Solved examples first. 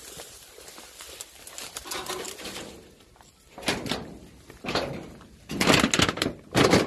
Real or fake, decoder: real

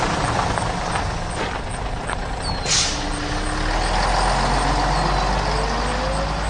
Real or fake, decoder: real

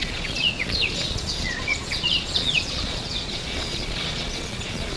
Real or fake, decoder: fake, vocoder, Vocos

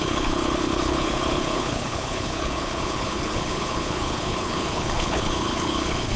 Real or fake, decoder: fake, codec, HILCodec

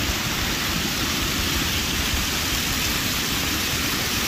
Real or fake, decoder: fake, vocoder, BigVGAN v2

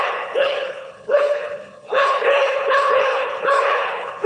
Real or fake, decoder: fake, codec, HILCodec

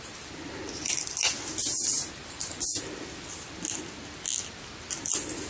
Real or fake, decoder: real